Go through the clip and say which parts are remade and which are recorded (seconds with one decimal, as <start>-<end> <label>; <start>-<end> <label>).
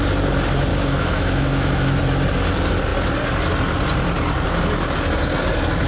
0.0-0.7 recorded; 0.7-2.0 remade; 2.0-5.9 recorded